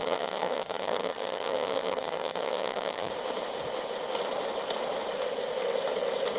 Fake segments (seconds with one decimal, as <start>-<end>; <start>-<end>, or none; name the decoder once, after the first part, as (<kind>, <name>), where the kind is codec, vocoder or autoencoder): 0.0-3.1 (vocoder, HiFi-GAN)